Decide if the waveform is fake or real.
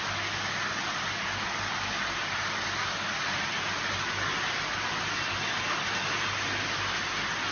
real